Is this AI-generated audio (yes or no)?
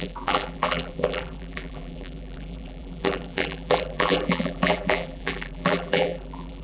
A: yes